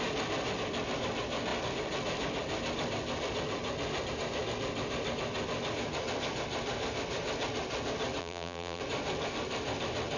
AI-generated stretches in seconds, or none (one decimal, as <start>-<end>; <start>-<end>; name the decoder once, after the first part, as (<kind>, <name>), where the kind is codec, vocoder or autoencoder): 8.2-8.8 (vocoder, BigVGAN v2)